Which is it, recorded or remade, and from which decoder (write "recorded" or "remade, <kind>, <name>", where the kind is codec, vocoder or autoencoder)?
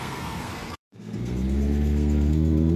remade, codec, SNAC